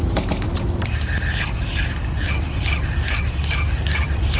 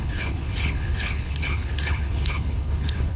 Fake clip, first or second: second